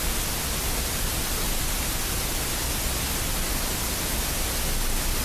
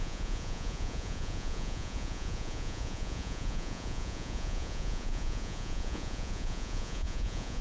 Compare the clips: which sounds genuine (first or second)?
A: first